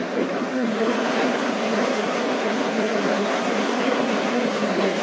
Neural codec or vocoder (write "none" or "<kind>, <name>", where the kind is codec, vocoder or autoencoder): codec, SNAC